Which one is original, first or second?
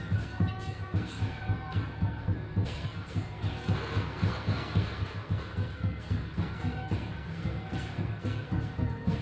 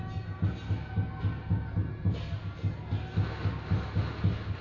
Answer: second